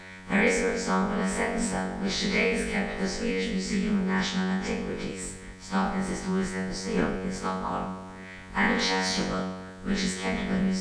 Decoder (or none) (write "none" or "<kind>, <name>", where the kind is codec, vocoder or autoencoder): vocoder, Vocos